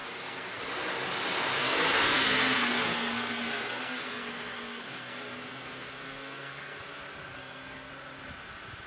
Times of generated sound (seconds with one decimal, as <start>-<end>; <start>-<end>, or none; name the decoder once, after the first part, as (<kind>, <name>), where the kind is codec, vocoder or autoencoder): 0.0-0.6 (codec, SNAC); 1.6-6.8; 7.3-7.9